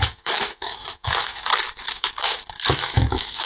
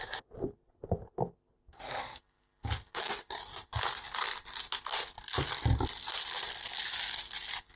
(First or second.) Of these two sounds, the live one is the second